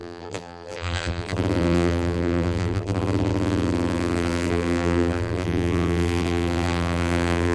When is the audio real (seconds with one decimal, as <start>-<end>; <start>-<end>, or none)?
none